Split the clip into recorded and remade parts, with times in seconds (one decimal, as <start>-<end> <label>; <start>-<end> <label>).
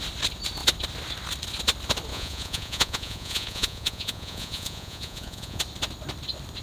0.0-2.1 recorded; 2.1-5.6 remade; 5.6-6.6 recorded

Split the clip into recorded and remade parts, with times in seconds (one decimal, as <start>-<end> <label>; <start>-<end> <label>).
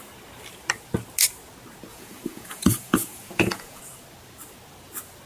0.0-1.9 recorded; 1.9-3.8 remade; 3.8-5.3 recorded